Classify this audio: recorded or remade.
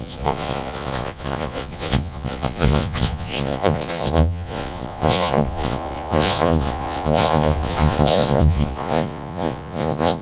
remade